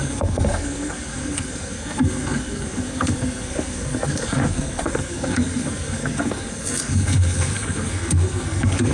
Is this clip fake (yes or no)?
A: yes